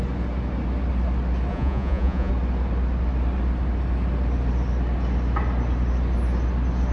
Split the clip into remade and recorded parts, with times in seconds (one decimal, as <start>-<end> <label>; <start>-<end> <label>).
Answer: 0.0-1.5 recorded; 1.5-2.3 remade; 2.3-6.9 recorded